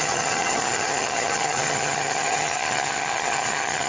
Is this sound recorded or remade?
remade